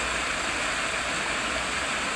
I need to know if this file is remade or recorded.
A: recorded